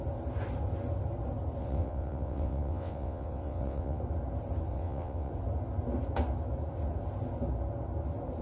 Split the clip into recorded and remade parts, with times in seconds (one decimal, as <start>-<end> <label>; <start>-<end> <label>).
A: 0.0-1.6 recorded; 1.6-4.0 remade; 4.0-4.7 recorded; 4.7-5.3 remade; 5.3-8.4 recorded